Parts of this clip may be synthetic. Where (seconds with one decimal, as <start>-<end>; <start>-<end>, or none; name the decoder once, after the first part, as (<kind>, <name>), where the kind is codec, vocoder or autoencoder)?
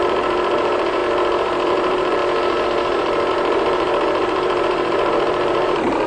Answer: 0.0-1.0 (vocoder, BigVGAN v2); 1.7-2.2; 3.3-6.1